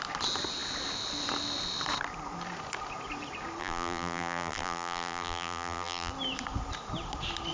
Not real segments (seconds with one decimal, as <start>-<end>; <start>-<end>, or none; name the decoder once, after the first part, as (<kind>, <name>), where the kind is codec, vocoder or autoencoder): 3.6-6.1 (vocoder, BigVGAN v2)